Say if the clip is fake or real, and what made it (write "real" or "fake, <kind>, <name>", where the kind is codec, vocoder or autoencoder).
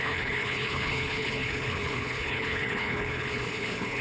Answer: fake, codec, HILCodec